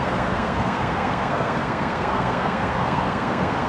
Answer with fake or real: fake